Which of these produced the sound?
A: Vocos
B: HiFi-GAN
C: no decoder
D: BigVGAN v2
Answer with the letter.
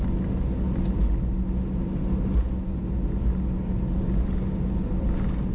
C